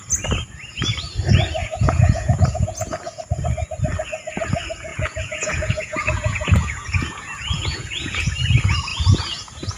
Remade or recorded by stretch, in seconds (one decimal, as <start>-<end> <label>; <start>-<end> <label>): 0.0-1.6 recorded; 1.6-3.2 remade; 3.2-4.9 recorded; 4.9-8.3 remade; 8.3-8.9 recorded; 8.9-9.8 remade